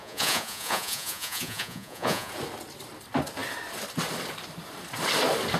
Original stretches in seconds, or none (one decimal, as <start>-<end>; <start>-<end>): 2.3-5.6